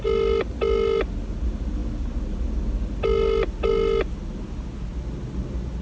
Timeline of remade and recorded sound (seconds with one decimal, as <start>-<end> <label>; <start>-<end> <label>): 0.0-5.8 recorded